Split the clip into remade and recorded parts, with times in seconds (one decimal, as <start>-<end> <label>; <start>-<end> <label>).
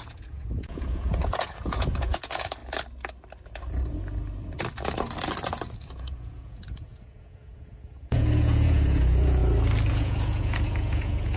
0.0-2.6 remade; 2.6-5.9 recorded; 5.9-9.4 remade; 9.4-9.9 recorded; 9.9-11.4 remade